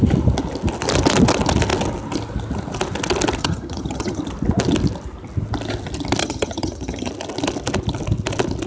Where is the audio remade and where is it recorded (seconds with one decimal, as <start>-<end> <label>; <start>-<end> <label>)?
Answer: 0.0-3.4 recorded; 3.4-4.2 remade; 4.2-6.2 recorded; 6.2-7.1 remade; 7.1-8.7 recorded